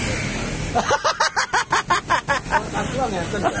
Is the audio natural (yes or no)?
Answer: yes